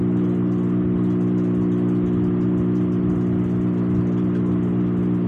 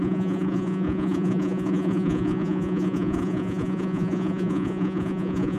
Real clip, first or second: first